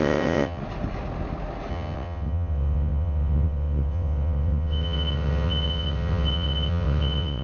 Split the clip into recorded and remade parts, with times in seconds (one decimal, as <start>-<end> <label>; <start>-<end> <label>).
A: 0.0-0.6 remade; 0.6-1.7 recorded; 1.7-7.4 remade